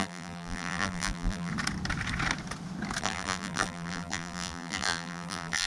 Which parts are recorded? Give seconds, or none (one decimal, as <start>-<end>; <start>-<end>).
1.5-3.0